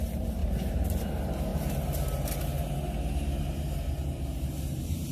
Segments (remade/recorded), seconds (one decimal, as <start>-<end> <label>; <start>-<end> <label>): 0.0-1.5 remade; 1.5-3.4 recorded; 3.4-5.1 remade